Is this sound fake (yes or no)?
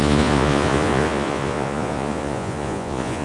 yes